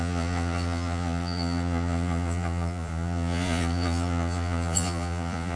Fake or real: fake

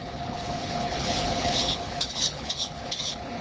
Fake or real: fake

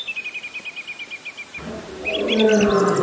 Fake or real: real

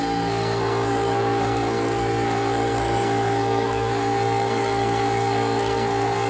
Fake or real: fake